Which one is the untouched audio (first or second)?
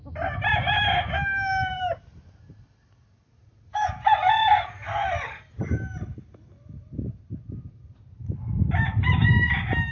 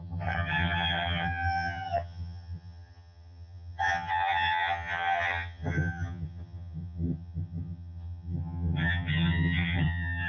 first